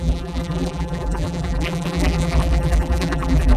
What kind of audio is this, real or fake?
fake